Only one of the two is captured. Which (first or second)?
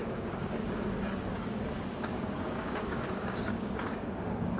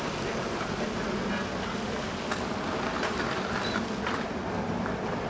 second